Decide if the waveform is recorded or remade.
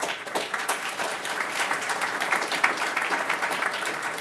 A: remade